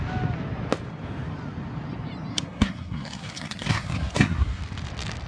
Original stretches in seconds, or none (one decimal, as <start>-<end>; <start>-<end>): 0.0-2.3; 4.6-5.3